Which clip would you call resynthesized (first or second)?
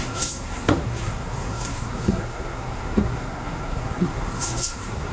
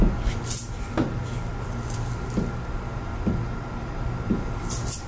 first